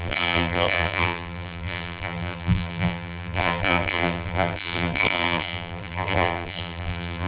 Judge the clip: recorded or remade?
remade